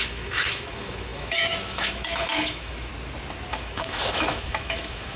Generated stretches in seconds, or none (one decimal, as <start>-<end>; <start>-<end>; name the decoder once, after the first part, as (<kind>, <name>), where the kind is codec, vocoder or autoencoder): 0.0-2.9 (autoencoder, DAC-VAE); 3.5-5.2